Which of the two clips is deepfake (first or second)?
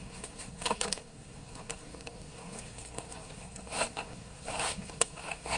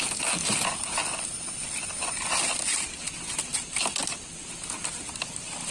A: first